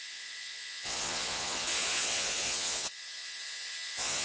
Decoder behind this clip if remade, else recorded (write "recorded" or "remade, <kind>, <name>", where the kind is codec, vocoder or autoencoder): remade, vocoder, Vocos